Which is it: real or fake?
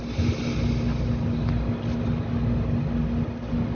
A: real